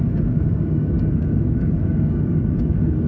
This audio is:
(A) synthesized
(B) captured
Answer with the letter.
A